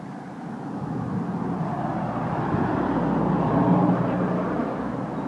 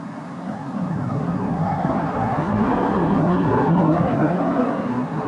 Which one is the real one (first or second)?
first